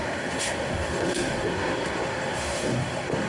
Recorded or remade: remade